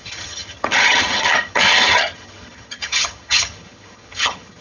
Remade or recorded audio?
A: remade